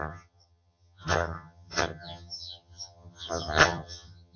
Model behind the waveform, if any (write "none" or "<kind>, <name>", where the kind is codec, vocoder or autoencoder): vocoder, HiFi-GAN